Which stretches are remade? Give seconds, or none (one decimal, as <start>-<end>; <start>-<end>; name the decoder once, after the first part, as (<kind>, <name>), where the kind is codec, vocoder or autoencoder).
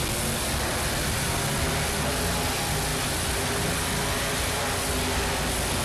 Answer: 2.9-4.6 (vocoder, BigVGAN v2)